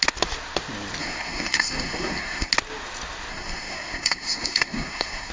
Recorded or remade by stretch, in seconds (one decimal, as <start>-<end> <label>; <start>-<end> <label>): 0.0-1.0 recorded; 1.0-2.5 remade; 2.5-3.3 recorded; 3.3-5.3 remade

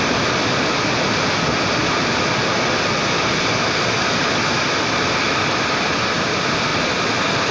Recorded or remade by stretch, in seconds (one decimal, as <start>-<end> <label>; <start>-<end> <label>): 0.0-7.5 recorded

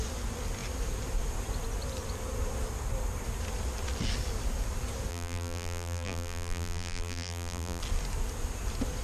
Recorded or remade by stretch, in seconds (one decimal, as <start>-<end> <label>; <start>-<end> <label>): 0.0-5.1 recorded; 5.1-7.8 remade; 7.8-9.0 recorded